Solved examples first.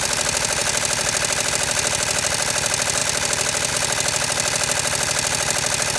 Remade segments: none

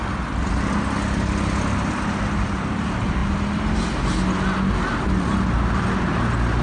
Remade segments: none

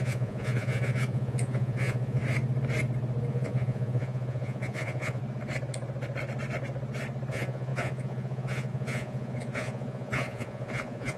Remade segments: 0.0-2.2 (vocoder, Vocos); 3.3-5.2; 7.3-11.2